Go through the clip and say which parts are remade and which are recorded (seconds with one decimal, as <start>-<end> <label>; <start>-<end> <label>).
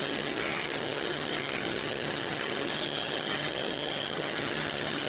0.0-5.1 remade